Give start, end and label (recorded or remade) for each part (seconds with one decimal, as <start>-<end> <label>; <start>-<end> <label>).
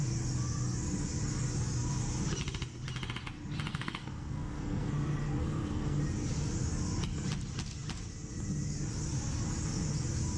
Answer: 0.0-3.7 recorded; 3.7-4.9 remade; 4.9-5.4 recorded; 5.4-6.0 remade; 6.0-10.4 recorded